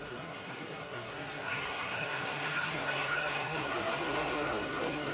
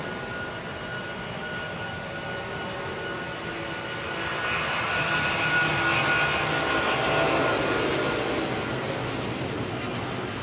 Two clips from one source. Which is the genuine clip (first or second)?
second